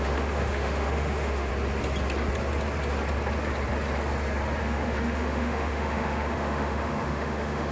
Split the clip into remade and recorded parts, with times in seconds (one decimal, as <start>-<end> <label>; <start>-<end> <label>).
0.0-1.5 remade; 1.5-4.6 recorded; 4.6-7.7 remade

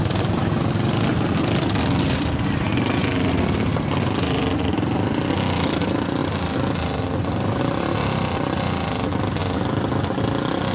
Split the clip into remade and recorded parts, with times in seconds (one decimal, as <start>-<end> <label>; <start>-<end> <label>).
0.0-3.0 recorded; 3.0-5.3 remade; 5.3-6.2 recorded; 6.2-7.6 remade; 7.6-10.7 recorded